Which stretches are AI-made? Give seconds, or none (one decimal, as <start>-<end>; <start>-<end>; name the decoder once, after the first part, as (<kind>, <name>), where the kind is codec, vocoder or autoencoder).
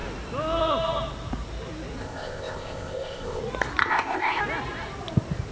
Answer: 2.0-3.4 (codec, ZipCodec); 3.8-4.4